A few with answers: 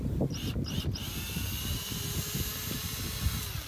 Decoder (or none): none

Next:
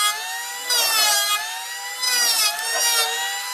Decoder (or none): none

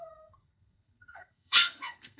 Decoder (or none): codec, SNAC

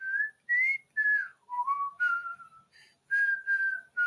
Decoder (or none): none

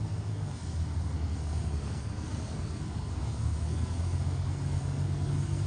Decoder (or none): codec, SNAC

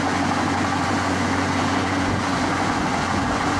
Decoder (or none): vocoder, Vocos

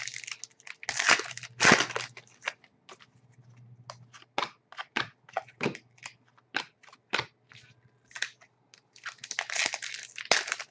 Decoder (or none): none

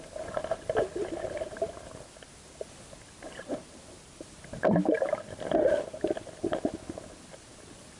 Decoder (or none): none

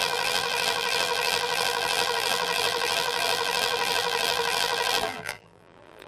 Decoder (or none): vocoder, BigVGAN v2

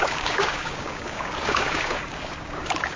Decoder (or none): codec, DAC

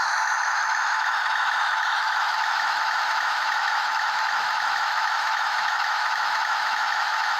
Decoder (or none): autoencoder, DAC-VAE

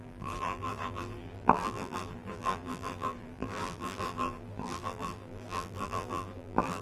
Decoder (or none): vocoder, BigVGAN v2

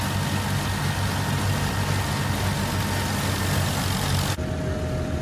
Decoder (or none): none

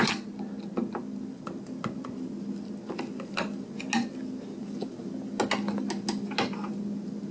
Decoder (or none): none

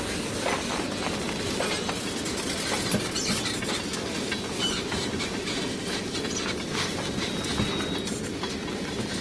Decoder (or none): none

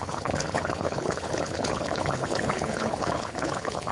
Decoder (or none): codec, HILCodec